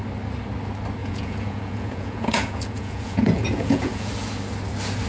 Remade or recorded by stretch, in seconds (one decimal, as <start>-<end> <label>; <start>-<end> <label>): 0.0-1.0 recorded; 1.0-4.1 remade; 4.1-5.1 recorded

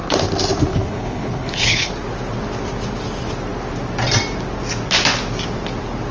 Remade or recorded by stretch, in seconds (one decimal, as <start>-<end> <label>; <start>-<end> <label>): 0.0-0.7 recorded; 0.7-1.9 remade; 1.9-6.1 recorded

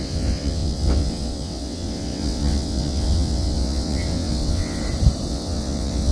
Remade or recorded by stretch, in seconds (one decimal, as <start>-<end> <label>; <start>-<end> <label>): 0.0-4.8 remade; 4.8-5.3 recorded; 5.3-6.1 remade

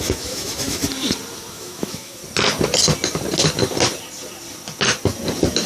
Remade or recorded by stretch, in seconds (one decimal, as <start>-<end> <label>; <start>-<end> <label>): 0.0-0.8 remade; 0.8-1.5 recorded; 1.5-2.2 remade; 2.2-5.7 recorded

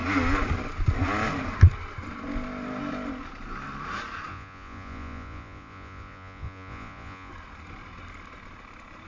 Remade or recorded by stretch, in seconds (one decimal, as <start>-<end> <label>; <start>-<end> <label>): 0.0-4.3 recorded; 4.3-7.3 remade; 7.3-9.1 recorded

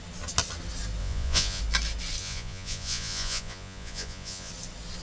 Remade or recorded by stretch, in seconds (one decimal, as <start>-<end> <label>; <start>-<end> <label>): 0.0-1.0 recorded; 1.0-1.6 remade; 1.6-2.2 recorded; 2.2-4.5 remade; 4.5-5.0 recorded